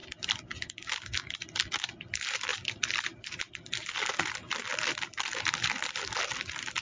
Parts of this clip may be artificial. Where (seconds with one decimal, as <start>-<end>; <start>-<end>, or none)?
none